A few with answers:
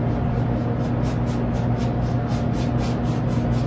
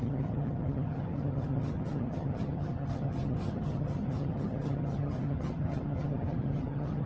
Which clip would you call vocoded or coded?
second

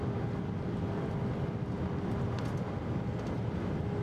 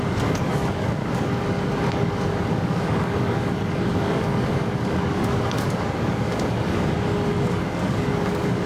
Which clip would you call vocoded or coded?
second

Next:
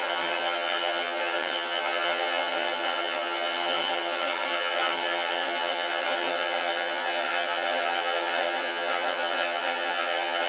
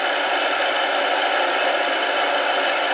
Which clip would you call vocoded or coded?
first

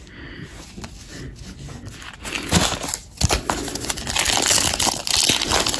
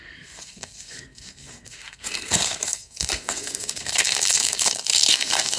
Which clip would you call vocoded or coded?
second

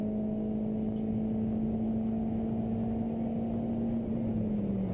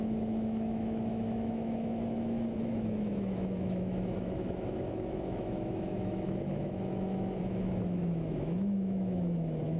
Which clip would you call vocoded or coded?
second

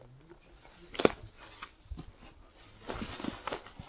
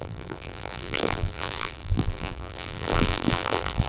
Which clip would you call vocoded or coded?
second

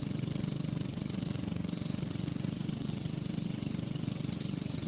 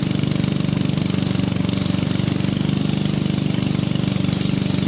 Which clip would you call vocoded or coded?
first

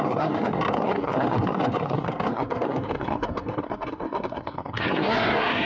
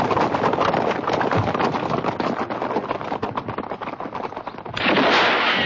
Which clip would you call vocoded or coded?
first